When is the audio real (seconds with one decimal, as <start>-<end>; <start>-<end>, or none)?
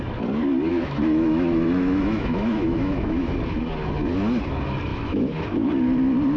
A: 0.0-0.7; 3.3-4.9; 5.7-6.4